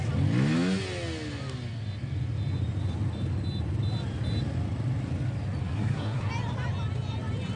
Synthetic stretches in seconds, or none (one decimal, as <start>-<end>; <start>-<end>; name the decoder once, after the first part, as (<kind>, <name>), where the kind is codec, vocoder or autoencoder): 5.6-6.3 (codec, SNAC)